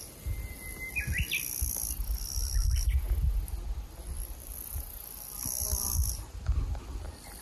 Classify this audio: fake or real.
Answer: real